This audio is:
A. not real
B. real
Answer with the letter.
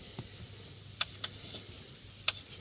B